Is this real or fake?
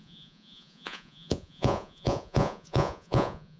fake